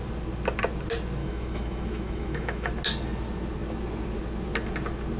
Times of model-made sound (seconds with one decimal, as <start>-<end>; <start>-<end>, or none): 1.2-2.7